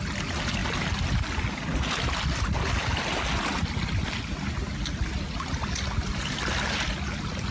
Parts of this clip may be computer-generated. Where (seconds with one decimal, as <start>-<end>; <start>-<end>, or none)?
none